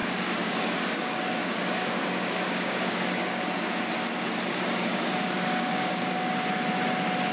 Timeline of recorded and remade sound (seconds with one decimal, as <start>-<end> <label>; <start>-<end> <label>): 0.0-3.4 remade; 3.4-4.9 recorded; 4.9-6.3 remade; 6.3-7.3 recorded